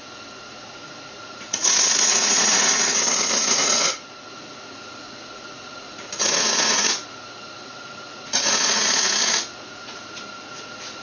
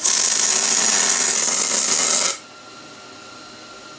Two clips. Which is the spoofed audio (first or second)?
first